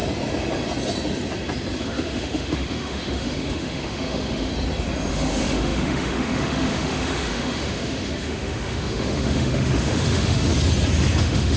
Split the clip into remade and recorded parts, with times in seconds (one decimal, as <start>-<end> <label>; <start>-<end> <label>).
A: 0.0-1.8 recorded; 1.8-4.5 remade; 4.5-5.1 recorded; 5.1-10.5 remade; 10.5-11.2 recorded; 11.2-11.6 remade